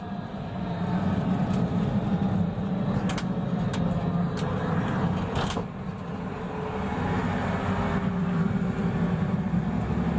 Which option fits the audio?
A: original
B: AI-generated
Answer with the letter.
A